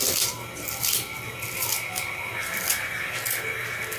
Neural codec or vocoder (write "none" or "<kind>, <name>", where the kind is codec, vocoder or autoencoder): none